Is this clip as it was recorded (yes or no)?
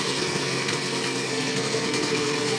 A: no